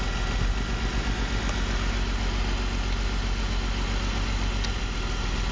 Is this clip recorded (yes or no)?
yes